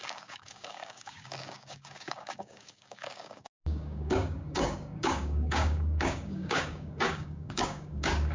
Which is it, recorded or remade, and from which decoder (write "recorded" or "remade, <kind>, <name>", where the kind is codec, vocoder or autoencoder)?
remade, codec, DAC